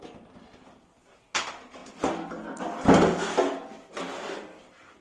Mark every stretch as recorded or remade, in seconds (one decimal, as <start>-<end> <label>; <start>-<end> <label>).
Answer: 0.0-5.0 recorded